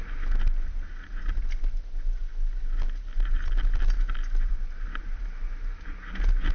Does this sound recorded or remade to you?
recorded